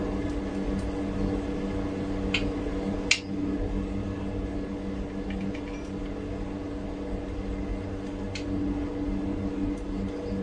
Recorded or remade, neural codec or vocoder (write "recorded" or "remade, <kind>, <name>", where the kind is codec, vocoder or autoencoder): recorded